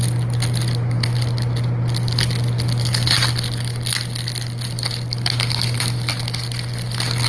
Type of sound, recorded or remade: recorded